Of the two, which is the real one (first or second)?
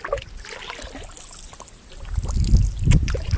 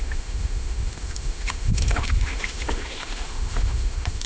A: first